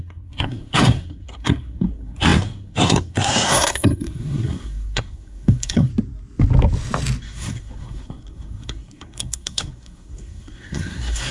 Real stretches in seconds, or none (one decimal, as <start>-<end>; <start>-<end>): 5.9-7.2